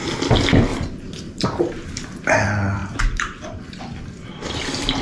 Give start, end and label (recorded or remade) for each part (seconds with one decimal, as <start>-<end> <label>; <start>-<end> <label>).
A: 0.0-5.0 recorded